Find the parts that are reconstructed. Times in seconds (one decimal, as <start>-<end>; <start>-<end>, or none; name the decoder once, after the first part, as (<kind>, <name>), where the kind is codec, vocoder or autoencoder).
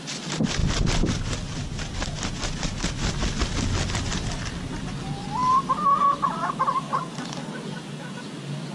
none